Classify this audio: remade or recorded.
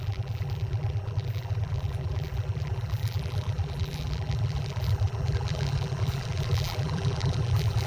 remade